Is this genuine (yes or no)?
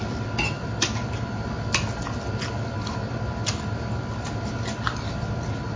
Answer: yes